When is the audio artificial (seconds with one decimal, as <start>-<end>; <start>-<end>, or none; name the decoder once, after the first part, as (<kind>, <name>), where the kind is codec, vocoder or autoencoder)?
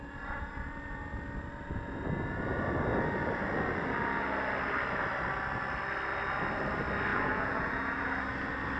7.1-8.1 (vocoder, Vocos)